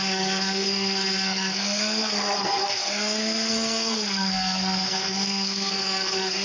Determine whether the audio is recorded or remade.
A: remade